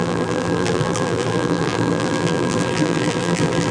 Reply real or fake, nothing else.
fake